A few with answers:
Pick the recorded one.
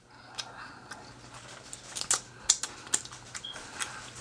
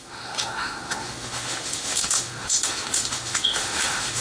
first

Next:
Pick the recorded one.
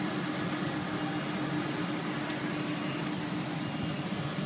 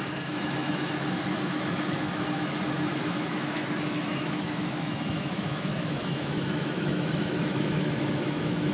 first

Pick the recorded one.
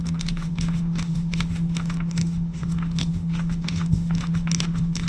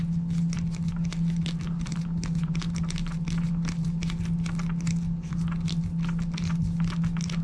second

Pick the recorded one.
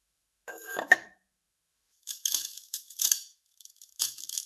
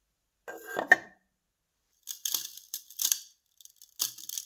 second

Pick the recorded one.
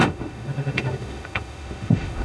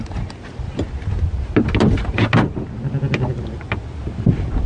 second